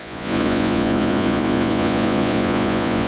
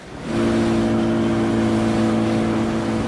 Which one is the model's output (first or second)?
first